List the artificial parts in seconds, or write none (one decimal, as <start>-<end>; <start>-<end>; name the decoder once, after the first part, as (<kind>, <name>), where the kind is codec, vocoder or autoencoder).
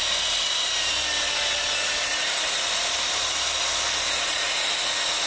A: none